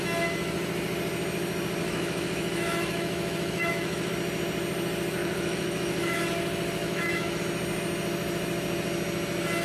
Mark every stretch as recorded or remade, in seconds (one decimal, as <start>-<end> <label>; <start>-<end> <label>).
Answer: 0.0-1.8 recorded; 1.8-4.1 remade; 4.1-5.2 recorded; 5.2-6.2 remade; 6.2-6.8 recorded; 6.8-7.4 remade; 7.4-9.6 recorded